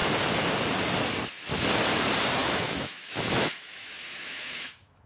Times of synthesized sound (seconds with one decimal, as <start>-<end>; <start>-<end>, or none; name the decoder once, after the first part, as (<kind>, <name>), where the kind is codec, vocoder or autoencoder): 2.4-5.1 (autoencoder, DAC-VAE)